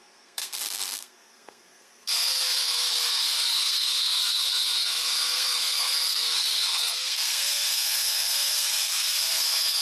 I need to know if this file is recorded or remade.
remade